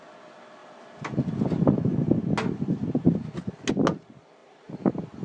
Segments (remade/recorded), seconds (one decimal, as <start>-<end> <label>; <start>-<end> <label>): 0.0-5.2 recorded